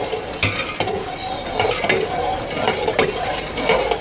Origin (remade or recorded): recorded